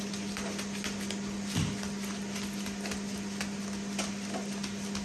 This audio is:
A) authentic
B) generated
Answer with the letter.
A